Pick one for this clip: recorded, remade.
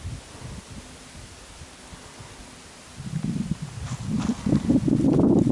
recorded